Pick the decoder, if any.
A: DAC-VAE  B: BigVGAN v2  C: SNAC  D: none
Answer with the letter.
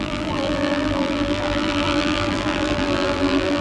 B